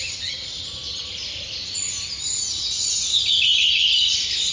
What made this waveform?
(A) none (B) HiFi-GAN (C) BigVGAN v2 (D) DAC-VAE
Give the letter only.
A